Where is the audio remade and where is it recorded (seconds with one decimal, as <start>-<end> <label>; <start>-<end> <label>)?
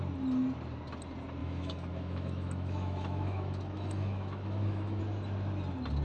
0.0-1.4 recorded; 1.4-5.0 remade; 5.0-6.0 recorded